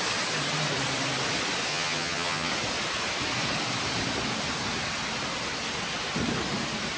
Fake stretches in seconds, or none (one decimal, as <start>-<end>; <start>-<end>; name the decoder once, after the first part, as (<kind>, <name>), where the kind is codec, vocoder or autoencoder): 1.7-2.5 (vocoder, HiFi-GAN)